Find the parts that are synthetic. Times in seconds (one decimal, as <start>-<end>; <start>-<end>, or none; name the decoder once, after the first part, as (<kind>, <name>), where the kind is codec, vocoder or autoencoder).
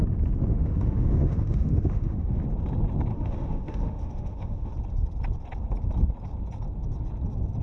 0.5-2.4 (autoencoder, DAC-VAE); 3.1-4.7